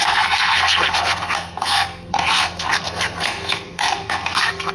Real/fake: fake